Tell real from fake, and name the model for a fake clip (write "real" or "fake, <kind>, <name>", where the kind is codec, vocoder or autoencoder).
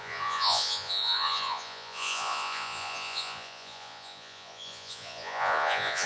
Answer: fake, vocoder, Vocos